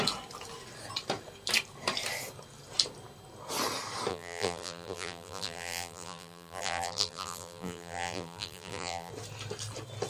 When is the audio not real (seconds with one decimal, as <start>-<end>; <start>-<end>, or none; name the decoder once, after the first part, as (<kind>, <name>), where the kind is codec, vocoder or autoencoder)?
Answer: 4.1-9.1 (vocoder, BigVGAN v2)